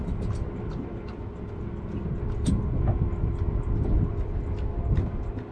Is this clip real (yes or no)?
yes